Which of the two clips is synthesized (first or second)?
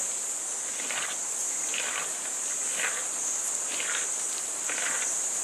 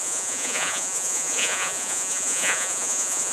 second